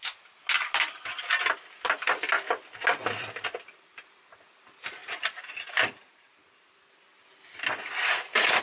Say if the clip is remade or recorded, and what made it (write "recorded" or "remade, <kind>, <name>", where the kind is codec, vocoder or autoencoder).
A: recorded